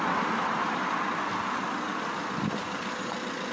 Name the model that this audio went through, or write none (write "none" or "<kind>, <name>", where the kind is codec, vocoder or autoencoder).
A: none